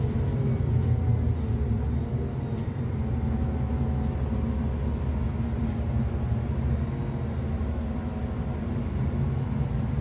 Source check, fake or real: real